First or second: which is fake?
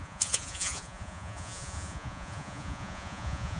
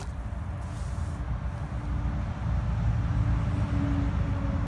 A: first